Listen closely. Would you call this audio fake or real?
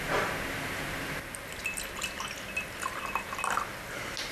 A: real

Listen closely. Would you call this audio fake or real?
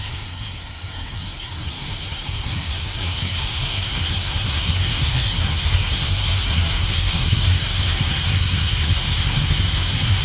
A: fake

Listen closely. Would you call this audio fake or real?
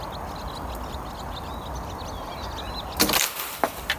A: real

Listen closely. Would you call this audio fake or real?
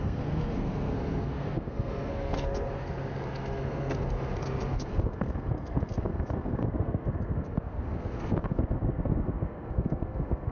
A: fake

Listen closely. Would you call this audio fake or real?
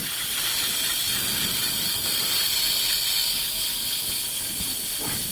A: real